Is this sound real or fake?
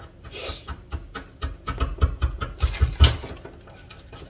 real